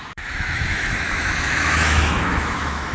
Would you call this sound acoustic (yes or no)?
no